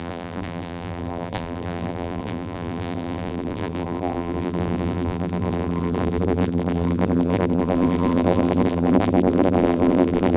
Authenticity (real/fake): fake